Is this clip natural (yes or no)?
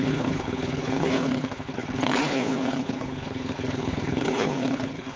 no